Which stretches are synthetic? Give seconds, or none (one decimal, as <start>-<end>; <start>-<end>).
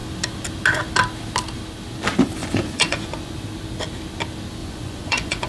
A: 2.4-3.3; 4.6-5.5